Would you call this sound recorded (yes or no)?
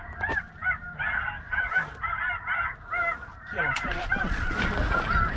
yes